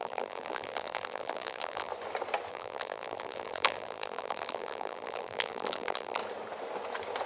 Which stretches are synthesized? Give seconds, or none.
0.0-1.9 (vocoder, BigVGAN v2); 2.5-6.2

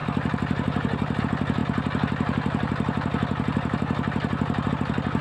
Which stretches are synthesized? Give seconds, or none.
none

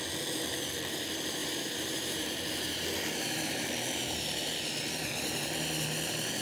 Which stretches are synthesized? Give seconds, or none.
1.4-3.7 (vocoder, BigVGAN v2)

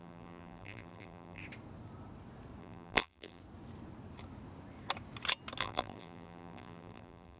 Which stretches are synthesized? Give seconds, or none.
0.0-1.4 (vocoder, BigVGAN v2); 2.6-3.4; 5.6-7.4

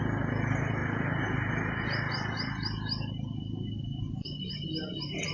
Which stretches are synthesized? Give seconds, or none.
none

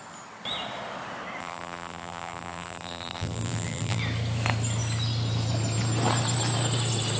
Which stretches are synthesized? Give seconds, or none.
1.4-4.0 (vocoder, BigVGAN v2)

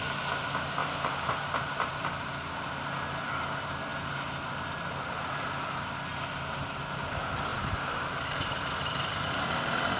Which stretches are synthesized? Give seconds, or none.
0.8-1.7 (vocoder, BigVGAN v2); 7.5-10.0